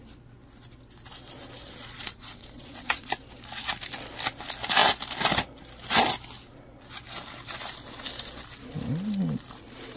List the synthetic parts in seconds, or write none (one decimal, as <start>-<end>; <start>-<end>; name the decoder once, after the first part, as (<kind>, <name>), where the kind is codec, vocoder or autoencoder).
1.8-3.1 (vocoder, Vocos)